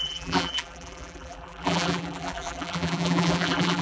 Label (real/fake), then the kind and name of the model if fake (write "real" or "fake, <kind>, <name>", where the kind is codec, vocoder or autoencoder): fake, vocoder, BigVGAN v2